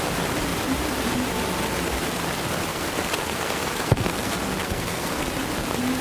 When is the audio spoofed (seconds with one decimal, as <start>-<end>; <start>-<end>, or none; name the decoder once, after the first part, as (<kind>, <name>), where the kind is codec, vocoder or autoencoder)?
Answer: 2.7-5.3 (codec, SNAC)